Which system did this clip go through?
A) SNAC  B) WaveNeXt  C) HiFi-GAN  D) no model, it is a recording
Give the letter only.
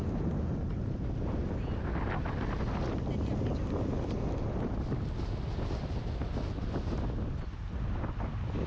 D